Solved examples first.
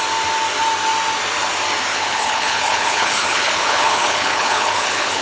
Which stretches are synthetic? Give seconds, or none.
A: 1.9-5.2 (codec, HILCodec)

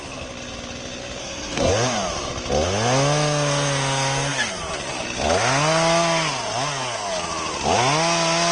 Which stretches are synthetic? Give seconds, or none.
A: 1.2-1.7 (codec, SNAC)

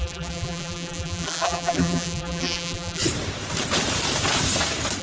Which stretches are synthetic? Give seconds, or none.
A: 0.0-3.0 (vocoder, BigVGAN v2)

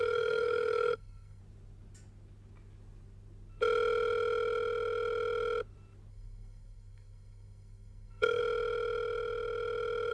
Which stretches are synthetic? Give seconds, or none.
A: 0.0-1.4 (codec, SNAC); 6.1-8.4

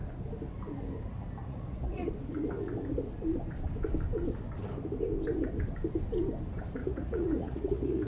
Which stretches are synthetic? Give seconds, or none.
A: 1.4-2.1 (vocoder, Vocos); 6.8-8.1